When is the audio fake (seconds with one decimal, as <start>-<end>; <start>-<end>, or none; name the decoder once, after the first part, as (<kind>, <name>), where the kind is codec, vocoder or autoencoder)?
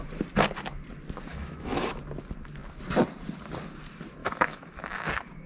1.3-2.0 (autoencoder, DAC-VAE); 4.2-5.1